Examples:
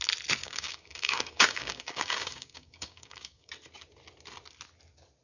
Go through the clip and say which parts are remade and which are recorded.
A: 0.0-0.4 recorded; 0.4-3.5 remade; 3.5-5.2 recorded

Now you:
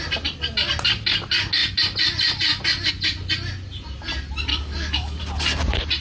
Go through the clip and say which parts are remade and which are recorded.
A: 0.0-4.5 recorded; 4.5-5.2 remade; 5.2-6.0 recorded

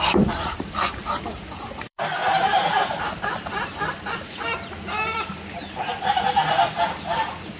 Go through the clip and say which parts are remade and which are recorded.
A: 0.0-2.2 recorded; 2.2-3.0 remade; 3.0-7.6 recorded

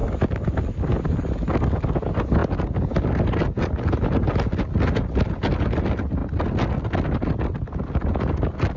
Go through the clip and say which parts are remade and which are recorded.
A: 0.0-8.8 recorded

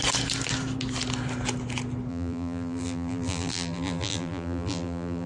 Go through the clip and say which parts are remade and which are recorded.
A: 0.0-2.1 recorded; 2.1-5.3 remade